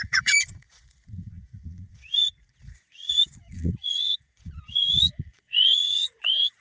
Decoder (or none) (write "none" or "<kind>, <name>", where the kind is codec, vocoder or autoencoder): vocoder, Vocos